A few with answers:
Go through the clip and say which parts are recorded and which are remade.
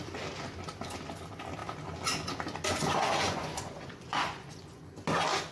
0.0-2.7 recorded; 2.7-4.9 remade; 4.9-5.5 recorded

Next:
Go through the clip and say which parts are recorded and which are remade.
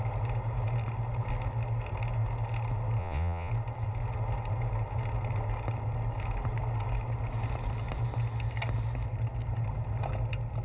0.0-3.0 recorded; 3.0-3.5 remade; 3.5-10.6 recorded